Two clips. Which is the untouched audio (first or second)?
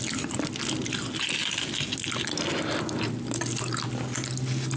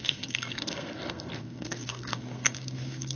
first